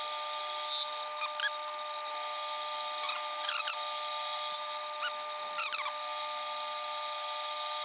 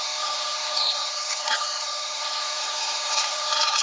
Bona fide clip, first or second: first